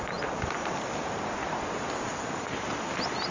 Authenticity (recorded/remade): recorded